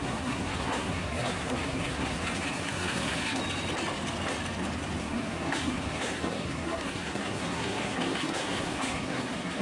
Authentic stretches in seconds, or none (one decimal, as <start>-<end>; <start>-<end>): 3.4-5.0